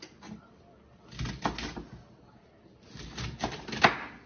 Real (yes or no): yes